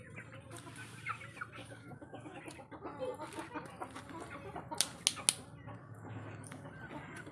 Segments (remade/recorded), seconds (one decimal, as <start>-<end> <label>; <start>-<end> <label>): 0.0-1.6 recorded; 1.6-2.4 remade; 2.4-5.8 recorded; 5.8-6.7 remade; 6.7-7.3 recorded